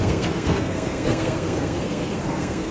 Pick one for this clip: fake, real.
fake